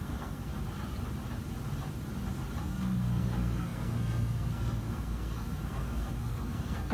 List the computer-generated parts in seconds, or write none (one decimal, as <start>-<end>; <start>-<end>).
0.0-0.5; 2.6-6.9

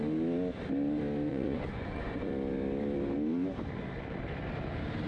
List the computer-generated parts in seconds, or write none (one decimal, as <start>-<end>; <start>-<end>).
1.3-2.3

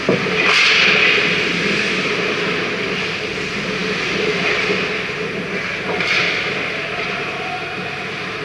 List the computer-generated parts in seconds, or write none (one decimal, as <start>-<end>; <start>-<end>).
none